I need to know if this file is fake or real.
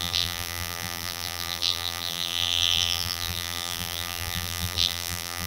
fake